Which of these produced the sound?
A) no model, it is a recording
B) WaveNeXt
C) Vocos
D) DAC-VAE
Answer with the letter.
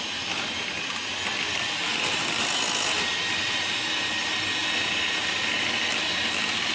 A